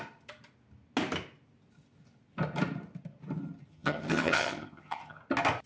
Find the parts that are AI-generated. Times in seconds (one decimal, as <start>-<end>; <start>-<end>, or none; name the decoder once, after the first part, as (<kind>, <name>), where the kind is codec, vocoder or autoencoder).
3.7-5.2 (vocoder, HiFi-GAN)